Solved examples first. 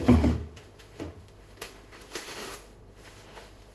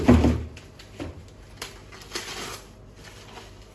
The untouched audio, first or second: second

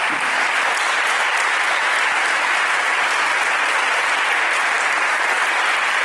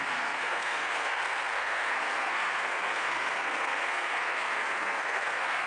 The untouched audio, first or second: first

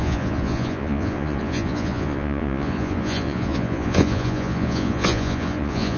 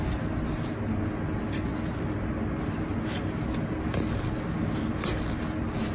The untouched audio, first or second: second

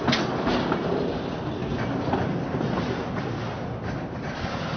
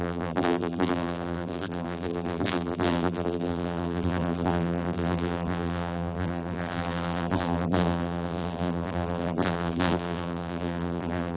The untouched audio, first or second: first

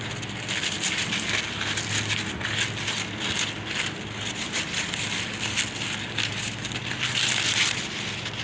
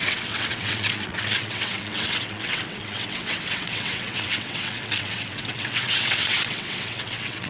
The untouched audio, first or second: first